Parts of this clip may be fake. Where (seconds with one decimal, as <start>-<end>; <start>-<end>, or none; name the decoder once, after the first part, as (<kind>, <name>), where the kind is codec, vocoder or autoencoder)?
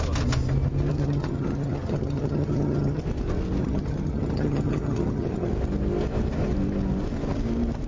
0.9-3.0 (vocoder, HiFi-GAN); 3.6-5.5